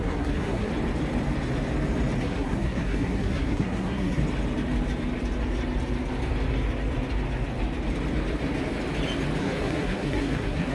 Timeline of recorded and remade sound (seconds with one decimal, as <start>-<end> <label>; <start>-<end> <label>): 0.0-0.7 remade; 0.7-2.2 recorded; 2.2-4.2 remade; 4.2-9.4 recorded; 9.4-10.7 remade